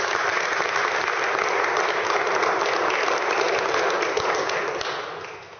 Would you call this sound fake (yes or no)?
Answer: no